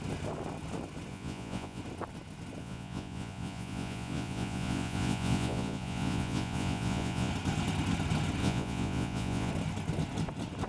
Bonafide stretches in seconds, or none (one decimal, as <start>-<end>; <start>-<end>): 0.0-1.1; 1.8-2.6; 7.3-8.4; 9.5-10.7